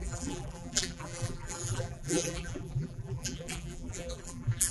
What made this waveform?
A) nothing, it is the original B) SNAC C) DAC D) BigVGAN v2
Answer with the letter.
D